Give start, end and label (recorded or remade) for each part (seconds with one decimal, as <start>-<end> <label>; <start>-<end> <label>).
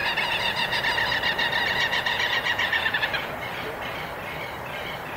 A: 0.0-0.8 remade; 0.8-1.7 recorded; 1.7-3.3 remade; 3.3-5.2 recorded